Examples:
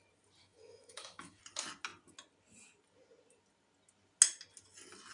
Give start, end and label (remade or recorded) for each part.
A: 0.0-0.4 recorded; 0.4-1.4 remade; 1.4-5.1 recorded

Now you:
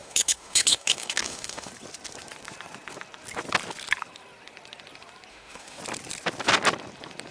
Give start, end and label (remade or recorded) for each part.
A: 0.0-1.7 remade; 1.7-5.3 recorded; 5.3-5.8 remade; 5.8-7.3 recorded

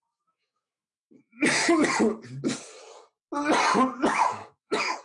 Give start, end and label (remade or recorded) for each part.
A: 0.0-1.9 remade; 1.9-4.0 recorded; 4.0-5.0 remade

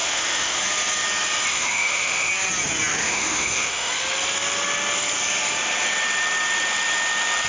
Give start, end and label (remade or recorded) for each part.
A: 0.0-0.6 remade; 0.6-1.5 recorded; 1.5-2.3 remade; 2.3-2.9 recorded; 2.9-3.9 remade; 3.9-7.5 recorded

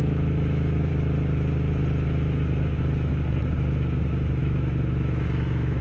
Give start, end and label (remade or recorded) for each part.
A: 0.0-0.9 remade; 0.9-4.4 recorded; 4.4-5.8 remade